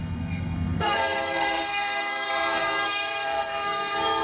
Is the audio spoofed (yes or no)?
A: yes